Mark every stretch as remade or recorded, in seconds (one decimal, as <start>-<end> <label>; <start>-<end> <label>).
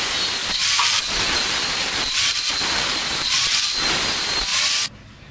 0.0-0.4 recorded; 0.4-3.6 remade; 3.6-5.3 recorded